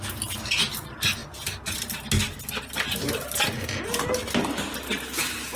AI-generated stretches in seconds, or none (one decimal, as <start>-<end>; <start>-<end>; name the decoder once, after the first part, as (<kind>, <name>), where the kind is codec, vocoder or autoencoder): none